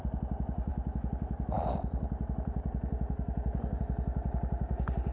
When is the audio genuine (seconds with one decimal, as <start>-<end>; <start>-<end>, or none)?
0.0-5.1